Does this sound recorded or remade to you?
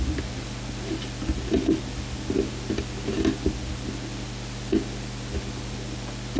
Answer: recorded